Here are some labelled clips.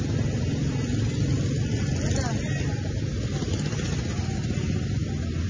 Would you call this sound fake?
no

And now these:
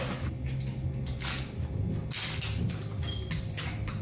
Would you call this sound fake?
no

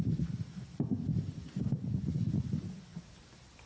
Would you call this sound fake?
no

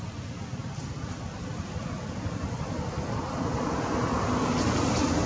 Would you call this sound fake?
no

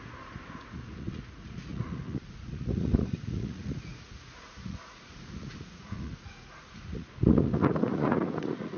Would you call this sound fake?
yes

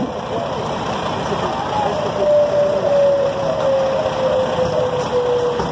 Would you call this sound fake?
no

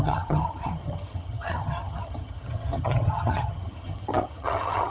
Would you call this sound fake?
yes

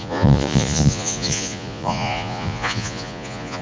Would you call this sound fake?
yes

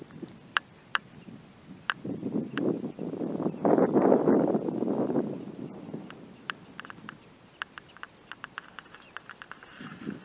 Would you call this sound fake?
no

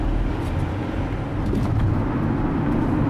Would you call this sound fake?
no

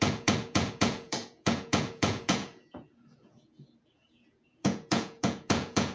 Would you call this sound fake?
yes